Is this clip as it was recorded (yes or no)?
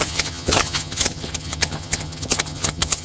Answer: no